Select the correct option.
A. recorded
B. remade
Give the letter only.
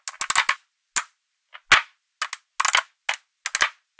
A